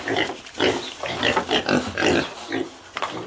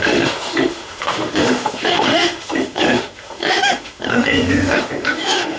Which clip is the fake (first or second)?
second